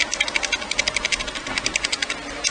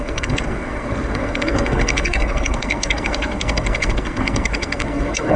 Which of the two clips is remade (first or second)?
second